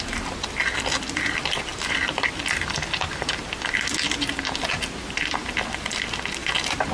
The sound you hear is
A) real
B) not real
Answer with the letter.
A